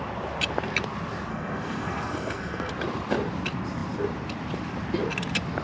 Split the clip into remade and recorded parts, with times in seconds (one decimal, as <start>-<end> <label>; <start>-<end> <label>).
0.0-1.3 recorded; 1.3-2.7 remade; 2.7-5.6 recorded